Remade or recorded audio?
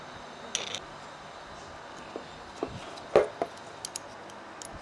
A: recorded